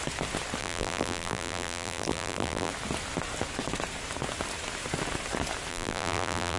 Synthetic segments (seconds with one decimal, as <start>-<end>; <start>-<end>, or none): 0.6-2.7; 5.7-6.6